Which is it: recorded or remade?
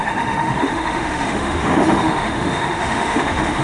remade